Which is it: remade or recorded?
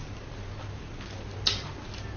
recorded